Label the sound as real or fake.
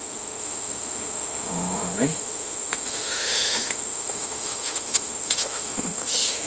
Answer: fake